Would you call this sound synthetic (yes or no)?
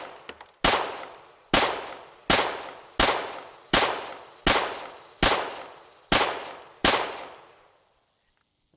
no